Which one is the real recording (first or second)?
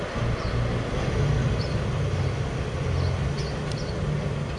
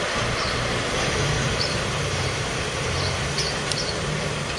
first